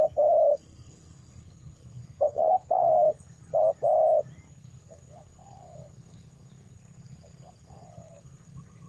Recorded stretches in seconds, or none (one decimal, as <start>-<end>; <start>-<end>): 3.4-4.5